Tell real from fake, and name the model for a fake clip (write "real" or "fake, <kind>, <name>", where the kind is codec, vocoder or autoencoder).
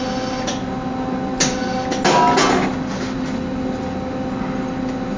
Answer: real